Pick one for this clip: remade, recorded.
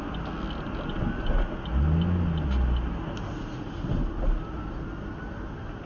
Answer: recorded